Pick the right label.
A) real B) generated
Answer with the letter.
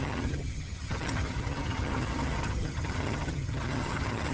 B